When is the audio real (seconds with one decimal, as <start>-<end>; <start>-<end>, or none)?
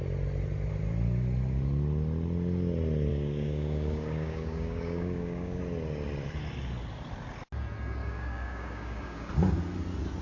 0.0-3.1; 5.6-8.0; 9.3-10.2